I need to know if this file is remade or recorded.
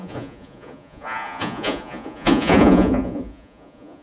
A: remade